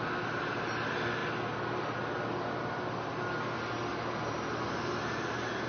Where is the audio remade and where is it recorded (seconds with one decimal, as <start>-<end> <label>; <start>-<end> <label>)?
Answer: 0.0-5.7 recorded